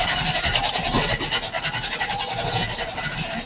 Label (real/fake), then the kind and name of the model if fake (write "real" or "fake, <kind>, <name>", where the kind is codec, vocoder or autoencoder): real